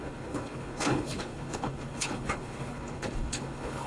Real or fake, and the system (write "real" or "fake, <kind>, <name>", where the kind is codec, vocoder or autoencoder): fake, codec, HILCodec